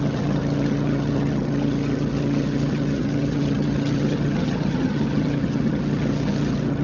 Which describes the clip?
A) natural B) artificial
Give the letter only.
B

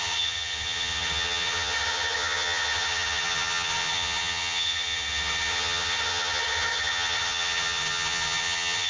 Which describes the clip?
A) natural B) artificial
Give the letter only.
B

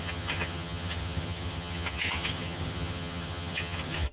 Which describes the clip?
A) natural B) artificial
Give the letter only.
B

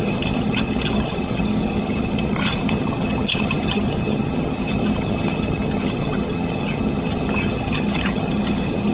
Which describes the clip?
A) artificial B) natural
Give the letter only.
A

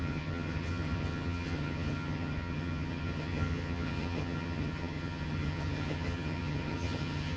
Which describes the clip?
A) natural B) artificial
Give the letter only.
B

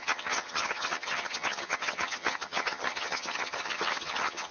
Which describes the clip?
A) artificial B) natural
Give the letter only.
A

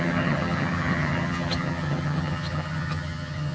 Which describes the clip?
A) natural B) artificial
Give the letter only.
B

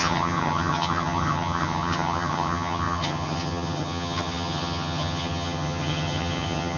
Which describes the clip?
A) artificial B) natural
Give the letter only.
A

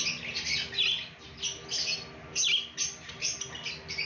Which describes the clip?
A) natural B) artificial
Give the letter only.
A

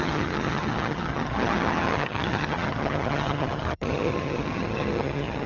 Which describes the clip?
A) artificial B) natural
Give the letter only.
A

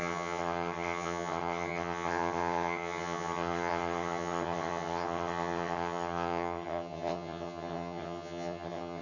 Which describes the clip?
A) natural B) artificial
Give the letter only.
B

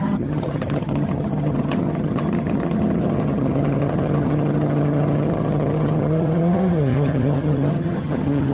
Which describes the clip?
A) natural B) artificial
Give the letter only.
B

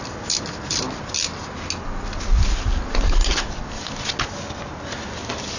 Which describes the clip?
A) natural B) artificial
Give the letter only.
A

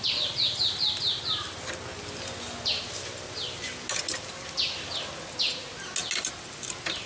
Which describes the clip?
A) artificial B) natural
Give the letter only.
B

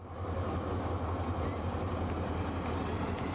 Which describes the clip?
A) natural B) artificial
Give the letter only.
A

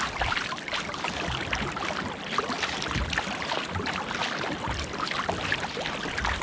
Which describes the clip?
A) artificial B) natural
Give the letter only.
B